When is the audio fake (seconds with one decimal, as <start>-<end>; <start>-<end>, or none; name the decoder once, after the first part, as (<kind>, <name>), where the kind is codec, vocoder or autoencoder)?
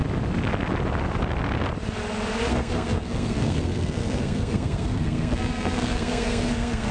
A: 2.5-6.9 (codec, SNAC)